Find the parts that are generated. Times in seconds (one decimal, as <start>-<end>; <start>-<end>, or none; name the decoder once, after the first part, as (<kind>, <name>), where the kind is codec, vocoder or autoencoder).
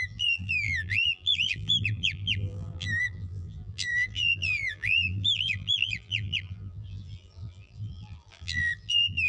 0.0-9.3 (vocoder, BigVGAN v2)